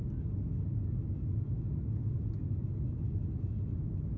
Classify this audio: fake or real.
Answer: real